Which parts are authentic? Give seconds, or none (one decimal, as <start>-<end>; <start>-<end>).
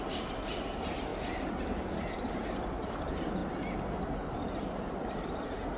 0.0-1.1; 3.0-5.8